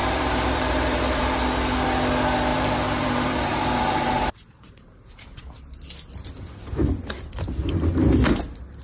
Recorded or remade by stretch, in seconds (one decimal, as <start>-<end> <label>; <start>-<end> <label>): 0.0-1.4 remade; 1.4-2.5 recorded; 2.5-5.4 remade; 5.4-8.8 recorded